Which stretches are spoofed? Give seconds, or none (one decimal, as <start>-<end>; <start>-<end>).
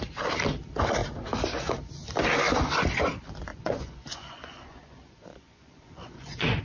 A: 3.5-6.6